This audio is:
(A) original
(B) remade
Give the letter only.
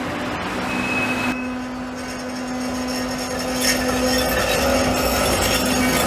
A